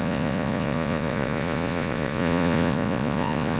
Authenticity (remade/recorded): remade